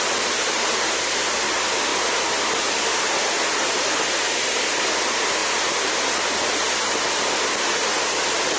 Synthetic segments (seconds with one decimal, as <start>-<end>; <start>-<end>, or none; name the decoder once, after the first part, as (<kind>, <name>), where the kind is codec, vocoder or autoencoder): none